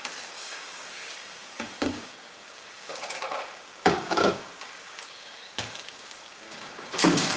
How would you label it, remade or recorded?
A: remade